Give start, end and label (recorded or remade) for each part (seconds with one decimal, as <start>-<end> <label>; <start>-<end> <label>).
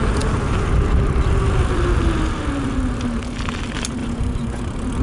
0.0-4.0 recorded; 4.0-4.6 remade; 4.6-5.0 recorded